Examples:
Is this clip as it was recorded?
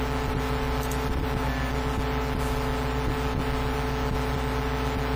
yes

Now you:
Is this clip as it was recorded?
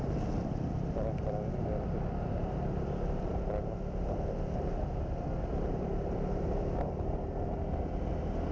yes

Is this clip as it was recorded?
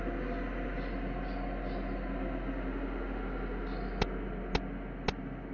yes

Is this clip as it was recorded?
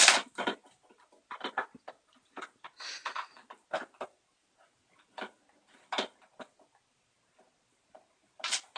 yes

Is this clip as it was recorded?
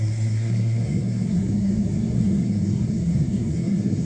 no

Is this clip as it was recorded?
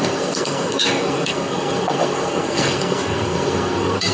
no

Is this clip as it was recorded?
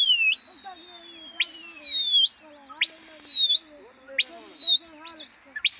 yes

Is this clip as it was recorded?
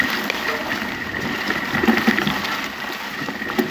yes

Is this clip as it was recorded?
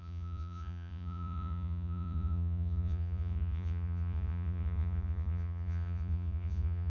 no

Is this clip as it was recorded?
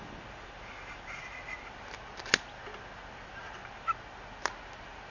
yes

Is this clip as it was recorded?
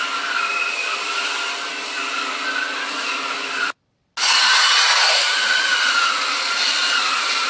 yes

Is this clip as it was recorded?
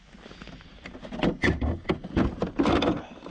yes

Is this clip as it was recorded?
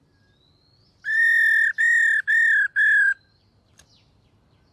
yes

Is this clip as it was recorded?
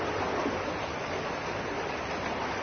yes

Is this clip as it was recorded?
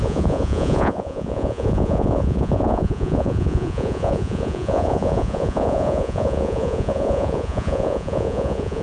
no